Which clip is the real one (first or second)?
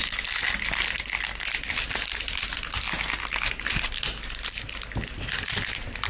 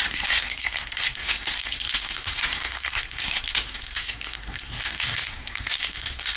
first